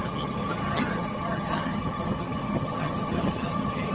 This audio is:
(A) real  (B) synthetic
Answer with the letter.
B